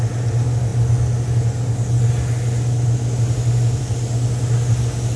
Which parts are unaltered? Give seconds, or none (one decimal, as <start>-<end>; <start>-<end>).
0.0-5.2